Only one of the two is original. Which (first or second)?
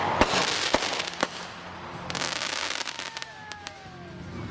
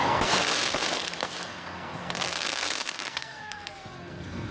first